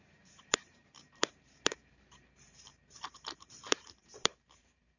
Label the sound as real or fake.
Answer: fake